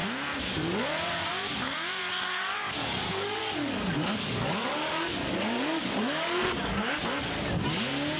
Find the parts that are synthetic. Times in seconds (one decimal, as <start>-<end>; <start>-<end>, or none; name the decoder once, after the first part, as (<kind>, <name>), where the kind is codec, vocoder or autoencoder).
2.1-7.0 (codec, DAC)